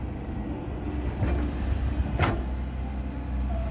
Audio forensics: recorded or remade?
recorded